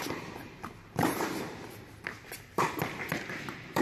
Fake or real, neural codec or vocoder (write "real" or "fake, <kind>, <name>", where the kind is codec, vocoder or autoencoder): real